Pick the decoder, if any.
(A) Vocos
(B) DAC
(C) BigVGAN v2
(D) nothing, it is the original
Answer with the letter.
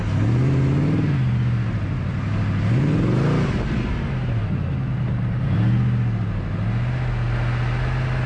D